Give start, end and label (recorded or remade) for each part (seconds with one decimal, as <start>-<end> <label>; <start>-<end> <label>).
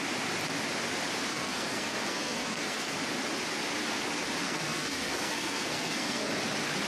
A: 0.0-1.3 recorded; 1.3-3.0 remade; 3.0-4.4 recorded; 4.4-6.3 remade; 6.3-6.9 recorded